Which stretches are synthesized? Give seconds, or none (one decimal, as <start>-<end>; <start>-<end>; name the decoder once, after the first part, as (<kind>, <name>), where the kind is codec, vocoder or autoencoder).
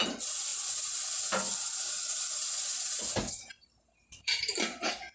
0.0-0.5 (vocoder, BigVGAN v2); 3.3-5.1